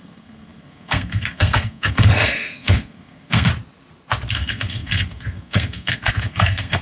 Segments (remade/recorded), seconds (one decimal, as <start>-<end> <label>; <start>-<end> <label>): 0.0-3.5 remade; 3.5-4.3 recorded; 4.3-6.8 remade